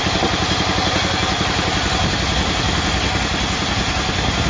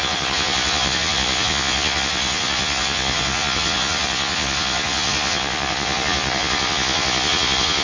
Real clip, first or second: first